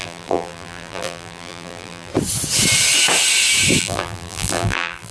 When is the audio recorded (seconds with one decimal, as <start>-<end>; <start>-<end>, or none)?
2.1-3.8